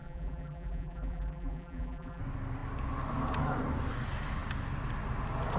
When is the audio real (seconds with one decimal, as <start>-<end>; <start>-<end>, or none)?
2.2-5.6